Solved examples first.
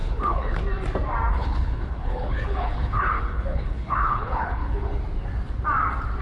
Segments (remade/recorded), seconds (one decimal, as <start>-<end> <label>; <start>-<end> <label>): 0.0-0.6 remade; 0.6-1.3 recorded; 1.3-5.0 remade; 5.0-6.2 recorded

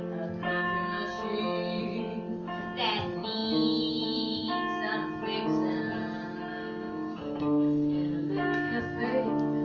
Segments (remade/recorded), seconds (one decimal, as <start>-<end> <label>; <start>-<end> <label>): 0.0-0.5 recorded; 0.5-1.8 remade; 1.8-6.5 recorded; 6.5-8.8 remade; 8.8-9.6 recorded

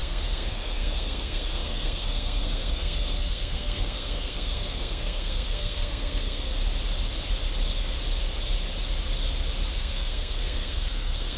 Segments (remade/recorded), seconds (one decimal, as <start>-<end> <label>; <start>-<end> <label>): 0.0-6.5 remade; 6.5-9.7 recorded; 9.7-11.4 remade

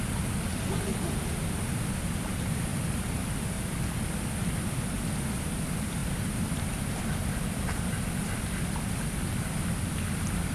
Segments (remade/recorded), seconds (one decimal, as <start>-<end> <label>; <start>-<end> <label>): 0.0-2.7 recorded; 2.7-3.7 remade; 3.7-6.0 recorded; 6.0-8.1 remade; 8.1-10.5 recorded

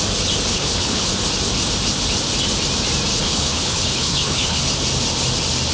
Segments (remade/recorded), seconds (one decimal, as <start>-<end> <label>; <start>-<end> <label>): 0.0-0.5 recorded; 0.5-1.1 remade; 1.1-3.1 recorded; 3.1-4.6 remade; 4.6-5.7 recorded

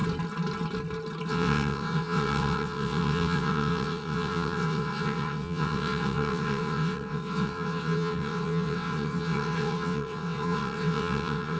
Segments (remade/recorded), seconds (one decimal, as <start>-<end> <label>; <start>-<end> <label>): 0.0-1.3 recorded; 1.3-11.6 remade

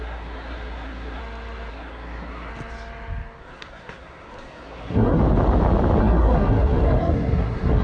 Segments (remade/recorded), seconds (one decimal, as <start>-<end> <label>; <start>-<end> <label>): 0.0-1.2 remade; 1.2-1.7 recorded; 1.7-2.5 remade; 2.5-3.4 recorded; 3.4-5.2 remade; 5.2-6.0 recorded; 6.0-7.8 remade

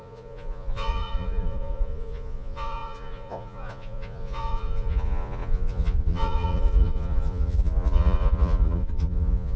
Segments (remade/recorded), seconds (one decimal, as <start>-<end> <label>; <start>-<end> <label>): 0.0-9.6 remade